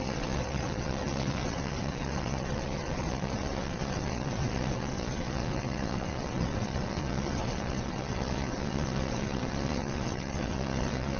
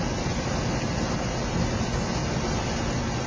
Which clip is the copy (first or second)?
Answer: first